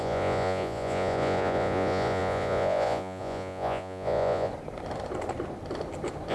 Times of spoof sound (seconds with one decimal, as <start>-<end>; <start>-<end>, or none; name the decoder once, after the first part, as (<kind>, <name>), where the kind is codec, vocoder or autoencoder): 0.0-4.5 (vocoder, Vocos)